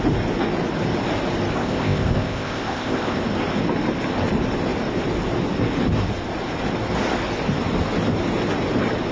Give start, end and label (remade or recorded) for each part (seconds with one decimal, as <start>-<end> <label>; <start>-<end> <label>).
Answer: 0.0-1.6 recorded; 1.6-3.2 remade; 3.2-9.1 recorded